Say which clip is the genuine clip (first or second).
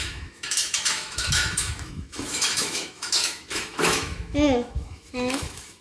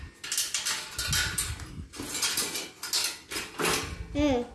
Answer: second